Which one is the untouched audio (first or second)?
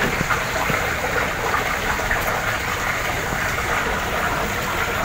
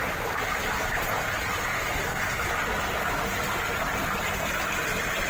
second